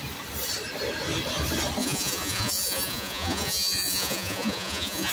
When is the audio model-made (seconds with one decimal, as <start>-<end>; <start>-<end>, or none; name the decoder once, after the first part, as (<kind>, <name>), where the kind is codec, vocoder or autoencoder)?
1.8-5.1 (vocoder, Vocos)